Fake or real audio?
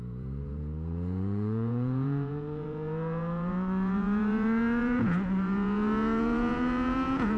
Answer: fake